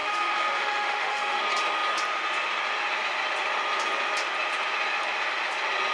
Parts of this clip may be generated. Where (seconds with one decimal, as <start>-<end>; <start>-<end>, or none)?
0.0-1.4